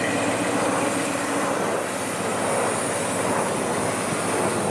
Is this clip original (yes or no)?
yes